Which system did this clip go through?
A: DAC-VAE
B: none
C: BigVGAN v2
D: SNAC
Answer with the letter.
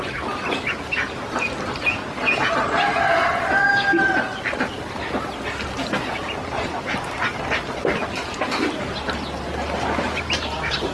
B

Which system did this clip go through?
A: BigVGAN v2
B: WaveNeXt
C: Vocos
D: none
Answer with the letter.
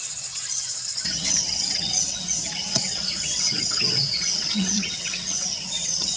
B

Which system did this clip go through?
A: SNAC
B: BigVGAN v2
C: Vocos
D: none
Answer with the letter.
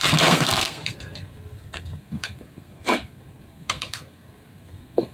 A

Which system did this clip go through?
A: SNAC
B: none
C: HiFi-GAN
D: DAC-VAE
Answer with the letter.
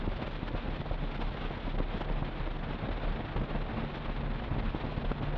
B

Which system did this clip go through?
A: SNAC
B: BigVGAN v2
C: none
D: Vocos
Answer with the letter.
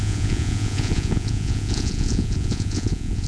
D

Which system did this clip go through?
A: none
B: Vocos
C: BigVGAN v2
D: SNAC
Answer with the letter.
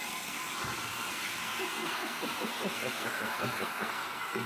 D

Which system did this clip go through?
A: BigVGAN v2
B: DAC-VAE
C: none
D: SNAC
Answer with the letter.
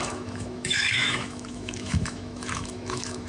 B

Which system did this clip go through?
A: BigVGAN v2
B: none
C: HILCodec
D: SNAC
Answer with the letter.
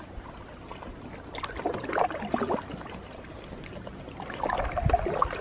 B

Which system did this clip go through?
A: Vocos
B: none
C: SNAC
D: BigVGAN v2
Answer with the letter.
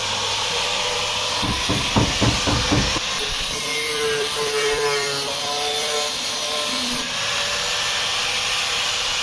D